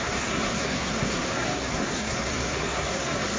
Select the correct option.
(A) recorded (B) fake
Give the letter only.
B